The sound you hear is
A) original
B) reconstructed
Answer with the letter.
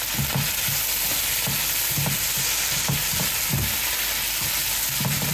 A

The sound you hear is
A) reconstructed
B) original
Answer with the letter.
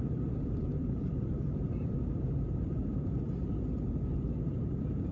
A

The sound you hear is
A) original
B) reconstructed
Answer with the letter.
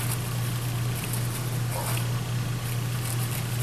A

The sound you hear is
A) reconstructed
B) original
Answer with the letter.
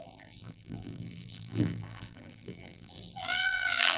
A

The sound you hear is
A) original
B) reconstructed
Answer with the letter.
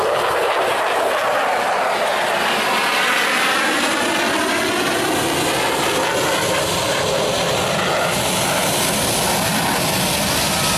A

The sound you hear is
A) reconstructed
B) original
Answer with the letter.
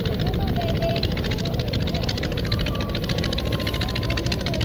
A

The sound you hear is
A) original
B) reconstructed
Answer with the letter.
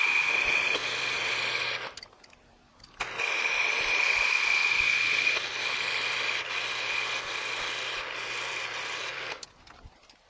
B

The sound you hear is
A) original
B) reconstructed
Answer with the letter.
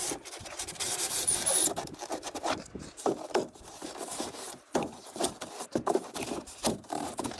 B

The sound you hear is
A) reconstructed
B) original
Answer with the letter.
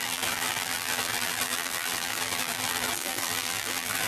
A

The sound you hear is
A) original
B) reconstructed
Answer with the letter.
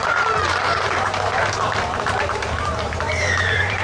B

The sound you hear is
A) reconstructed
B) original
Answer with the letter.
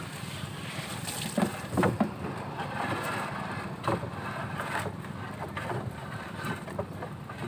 B